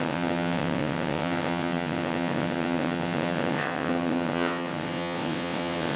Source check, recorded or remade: remade